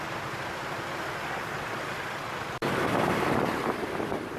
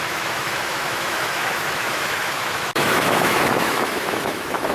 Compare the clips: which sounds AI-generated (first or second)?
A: second